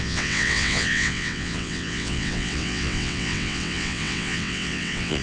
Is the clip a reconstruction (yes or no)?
yes